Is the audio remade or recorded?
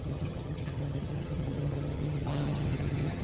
remade